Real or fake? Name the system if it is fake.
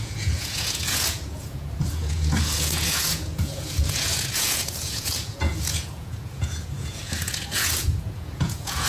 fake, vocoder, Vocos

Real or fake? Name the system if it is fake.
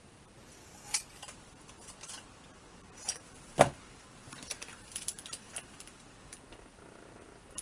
fake, vocoder, BigVGAN v2